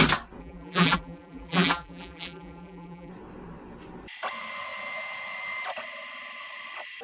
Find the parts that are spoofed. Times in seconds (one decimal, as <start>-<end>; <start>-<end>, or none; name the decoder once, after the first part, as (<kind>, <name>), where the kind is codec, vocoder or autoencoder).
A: 0.4-3.1 (vocoder, BigVGAN v2)